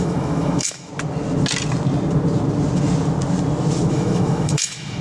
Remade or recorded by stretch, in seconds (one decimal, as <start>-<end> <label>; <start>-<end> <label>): 0.0-0.9 remade; 0.9-3.9 recorded; 3.9-5.0 remade

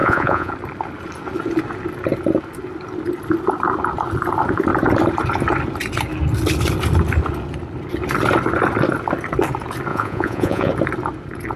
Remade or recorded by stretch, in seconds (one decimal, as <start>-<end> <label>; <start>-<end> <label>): 0.0-0.5 remade; 0.5-9.9 recorded; 9.9-10.7 remade; 10.7-11.6 recorded